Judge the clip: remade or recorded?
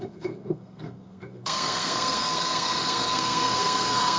remade